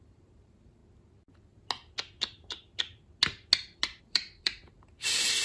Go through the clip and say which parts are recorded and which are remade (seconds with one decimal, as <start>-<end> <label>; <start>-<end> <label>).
0.0-0.8 remade; 0.8-4.0 recorded; 4.0-5.4 remade